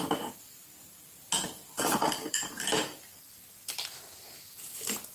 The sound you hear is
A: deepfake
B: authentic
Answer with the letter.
B